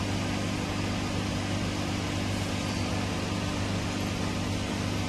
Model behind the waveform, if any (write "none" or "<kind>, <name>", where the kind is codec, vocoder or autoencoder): none